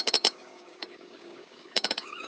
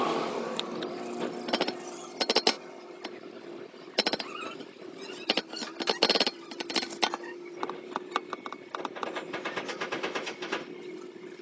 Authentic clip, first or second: second